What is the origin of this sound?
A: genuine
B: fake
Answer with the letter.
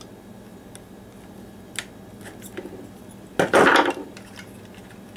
A